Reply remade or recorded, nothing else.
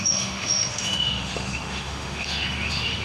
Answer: remade